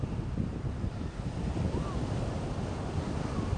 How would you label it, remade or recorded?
recorded